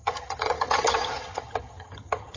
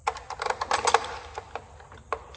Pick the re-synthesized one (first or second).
first